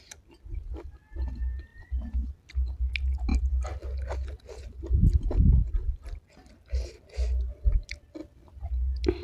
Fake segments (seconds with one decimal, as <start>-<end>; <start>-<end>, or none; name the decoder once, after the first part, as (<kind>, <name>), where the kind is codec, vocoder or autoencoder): none